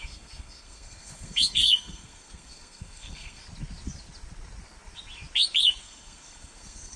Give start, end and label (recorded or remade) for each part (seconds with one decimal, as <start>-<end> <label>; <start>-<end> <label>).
0.0-3.4 remade; 3.4-5.6 recorded; 5.6-7.0 remade